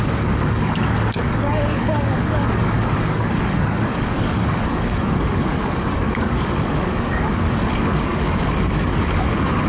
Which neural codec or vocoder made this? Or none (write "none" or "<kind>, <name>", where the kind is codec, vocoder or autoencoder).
codec, DAC